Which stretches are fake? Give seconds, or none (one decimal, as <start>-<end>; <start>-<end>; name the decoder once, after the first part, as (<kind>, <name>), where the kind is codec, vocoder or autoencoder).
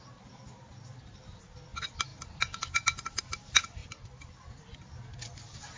none